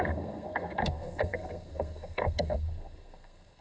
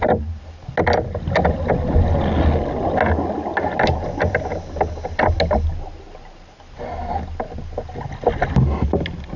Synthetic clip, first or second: first